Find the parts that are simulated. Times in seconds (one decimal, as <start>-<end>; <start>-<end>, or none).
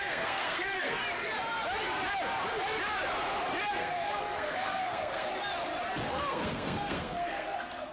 0.0-1.0; 3.7-5.3; 6.1-7.9